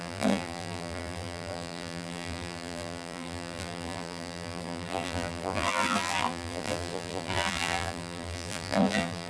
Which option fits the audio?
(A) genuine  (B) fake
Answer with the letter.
B